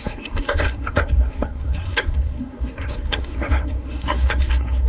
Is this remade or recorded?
remade